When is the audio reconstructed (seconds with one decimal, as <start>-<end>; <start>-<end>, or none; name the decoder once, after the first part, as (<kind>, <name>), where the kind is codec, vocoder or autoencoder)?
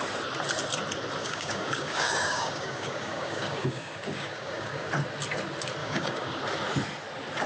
1.2-4.9 (codec, DAC); 5.8-6.4